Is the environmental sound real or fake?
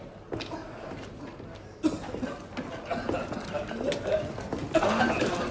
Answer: real